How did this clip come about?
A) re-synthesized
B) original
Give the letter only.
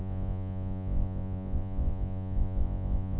A